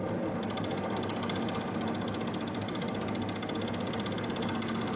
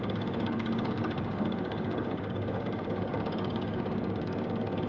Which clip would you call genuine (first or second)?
first